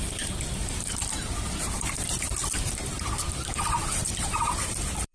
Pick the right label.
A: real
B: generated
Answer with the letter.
B